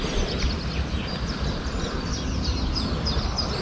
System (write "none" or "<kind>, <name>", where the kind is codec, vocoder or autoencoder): none